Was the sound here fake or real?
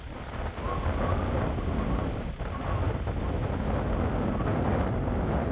real